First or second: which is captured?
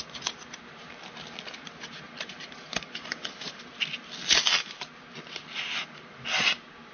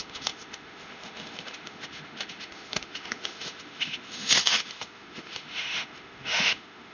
first